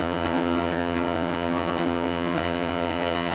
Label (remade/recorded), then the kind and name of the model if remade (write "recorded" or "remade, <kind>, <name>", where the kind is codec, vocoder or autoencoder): remade, vocoder, HiFi-GAN